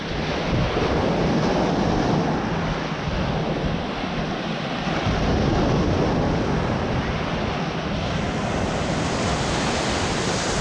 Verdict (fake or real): real